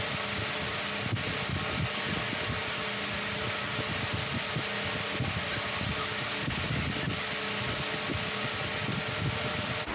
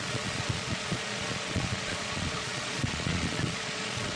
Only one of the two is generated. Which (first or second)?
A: second